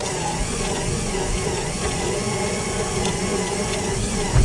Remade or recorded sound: remade